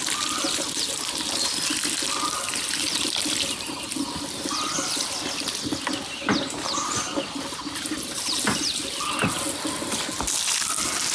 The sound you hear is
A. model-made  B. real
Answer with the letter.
B